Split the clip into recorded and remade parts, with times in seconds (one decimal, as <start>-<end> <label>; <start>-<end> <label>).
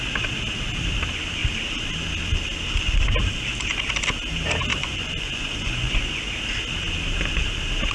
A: 0.0-4.7 recorded; 4.7-6.2 remade; 6.2-7.9 recorded